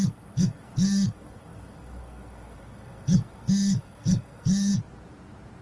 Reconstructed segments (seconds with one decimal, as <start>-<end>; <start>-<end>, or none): 0.0-4.7